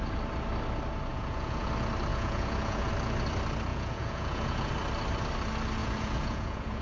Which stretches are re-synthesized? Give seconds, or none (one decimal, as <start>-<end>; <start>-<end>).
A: 1.1-1.7; 2.1-2.9; 3.7-4.7; 5.8-6.8